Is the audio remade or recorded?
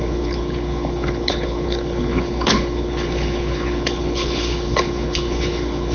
remade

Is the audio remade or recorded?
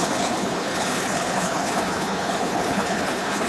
remade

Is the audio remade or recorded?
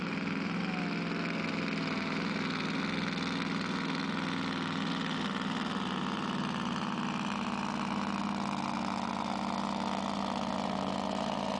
recorded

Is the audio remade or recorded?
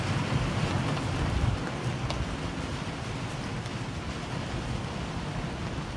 recorded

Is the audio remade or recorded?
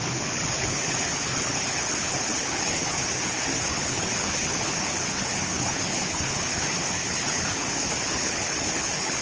remade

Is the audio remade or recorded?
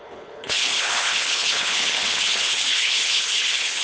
remade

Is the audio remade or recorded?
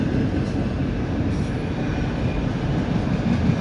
recorded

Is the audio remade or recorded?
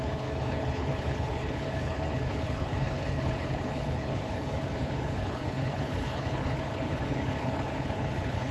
remade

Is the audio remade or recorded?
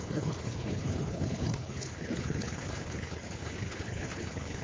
remade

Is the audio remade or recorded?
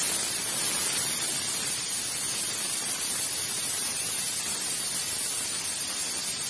recorded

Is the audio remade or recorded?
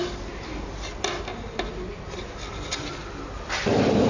recorded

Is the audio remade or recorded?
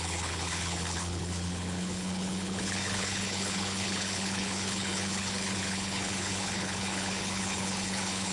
remade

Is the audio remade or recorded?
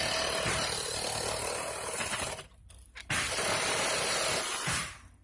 recorded